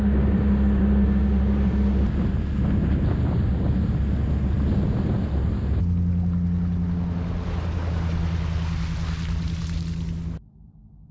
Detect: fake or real real